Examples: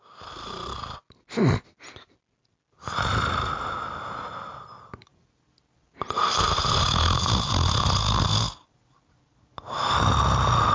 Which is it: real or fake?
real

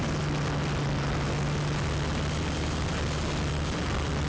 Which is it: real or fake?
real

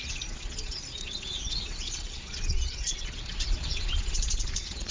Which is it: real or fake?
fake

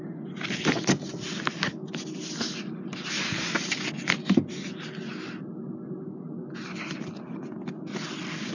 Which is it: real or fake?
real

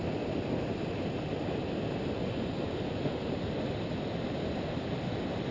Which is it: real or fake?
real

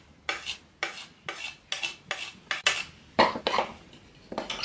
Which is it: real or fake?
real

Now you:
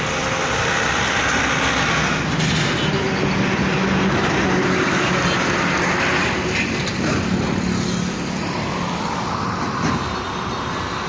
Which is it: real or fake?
real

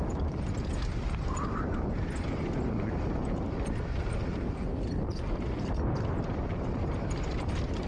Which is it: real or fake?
real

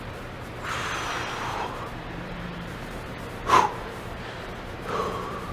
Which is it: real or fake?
fake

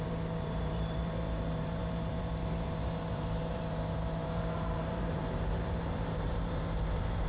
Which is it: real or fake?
fake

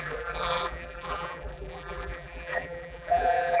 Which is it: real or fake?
fake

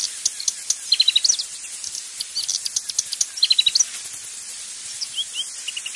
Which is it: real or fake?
real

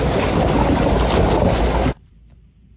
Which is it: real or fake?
real